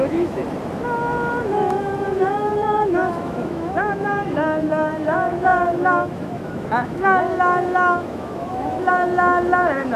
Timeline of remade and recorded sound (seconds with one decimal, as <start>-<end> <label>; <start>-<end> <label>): 0.0-0.4 remade; 0.4-1.4 recorded; 1.4-10.0 remade